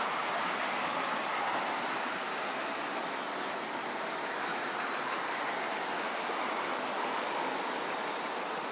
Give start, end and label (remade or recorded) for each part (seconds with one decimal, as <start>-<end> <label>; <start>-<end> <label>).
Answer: 0.0-4.5 recorded; 4.5-5.2 remade; 5.2-8.7 recorded